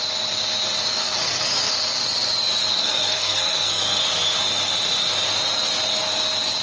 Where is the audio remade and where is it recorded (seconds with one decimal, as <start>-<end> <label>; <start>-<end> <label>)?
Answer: 0.0-1.0 recorded; 1.0-1.7 remade; 1.7-2.7 recorded; 2.7-4.0 remade; 4.0-6.6 recorded